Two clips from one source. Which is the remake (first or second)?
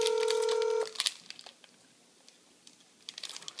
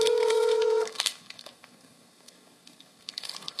second